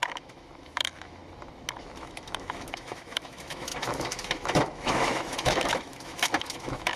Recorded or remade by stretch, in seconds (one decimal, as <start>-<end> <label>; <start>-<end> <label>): 0.0-1.2 remade; 1.2-1.8 recorded; 1.8-7.0 remade